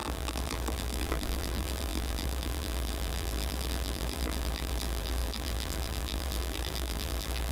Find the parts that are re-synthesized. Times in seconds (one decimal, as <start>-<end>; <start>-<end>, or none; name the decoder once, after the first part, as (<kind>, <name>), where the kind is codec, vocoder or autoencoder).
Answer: 0.0-7.5 (vocoder, BigVGAN v2)